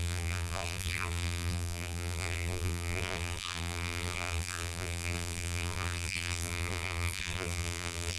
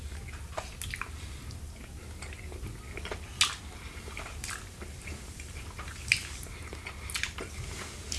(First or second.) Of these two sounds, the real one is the second